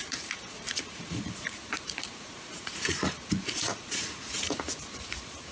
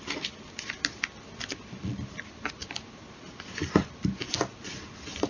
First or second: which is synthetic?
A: first